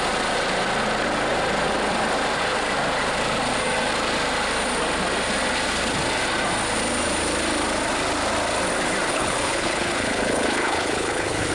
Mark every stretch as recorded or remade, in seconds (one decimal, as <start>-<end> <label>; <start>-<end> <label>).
0.0-9.1 recorded; 9.1-11.5 remade

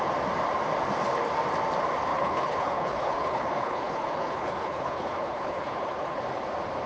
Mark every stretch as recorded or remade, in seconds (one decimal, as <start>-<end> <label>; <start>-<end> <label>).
0.0-2.1 recorded; 2.1-6.2 remade; 6.2-6.9 recorded

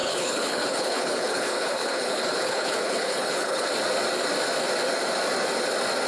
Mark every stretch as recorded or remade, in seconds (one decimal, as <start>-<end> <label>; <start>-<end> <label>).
0.0-3.7 remade; 3.7-6.1 recorded